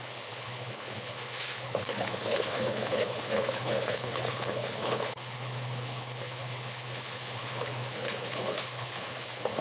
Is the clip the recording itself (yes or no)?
no